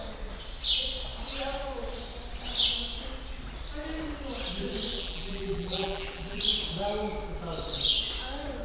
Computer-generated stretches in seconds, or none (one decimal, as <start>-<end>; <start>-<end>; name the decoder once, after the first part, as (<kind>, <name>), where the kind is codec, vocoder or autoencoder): 4.9-6.4 (vocoder, BigVGAN v2)